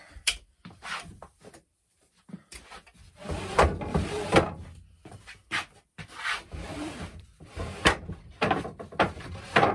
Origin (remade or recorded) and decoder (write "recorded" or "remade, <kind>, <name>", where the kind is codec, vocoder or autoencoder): remade, vocoder, BigVGAN v2